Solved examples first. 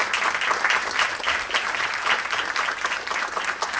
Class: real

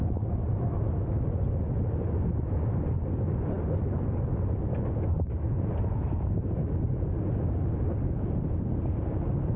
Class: real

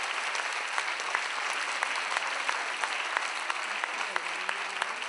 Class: real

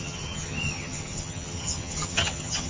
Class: fake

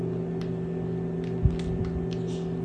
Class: real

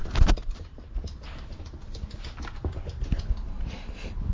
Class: real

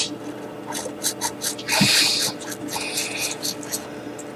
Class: real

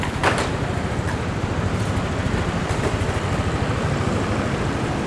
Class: real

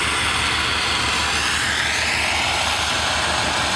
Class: real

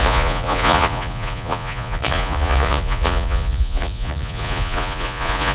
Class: fake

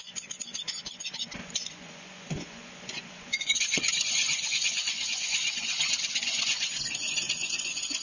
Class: fake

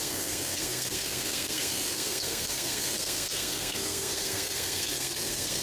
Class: fake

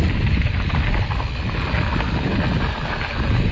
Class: real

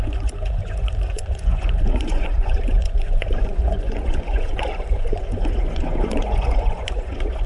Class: fake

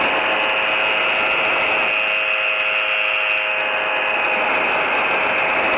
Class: real